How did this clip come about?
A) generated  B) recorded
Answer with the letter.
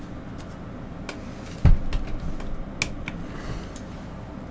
B